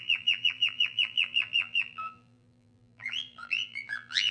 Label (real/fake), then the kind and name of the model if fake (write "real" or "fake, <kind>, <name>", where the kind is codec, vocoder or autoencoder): fake, vocoder, BigVGAN v2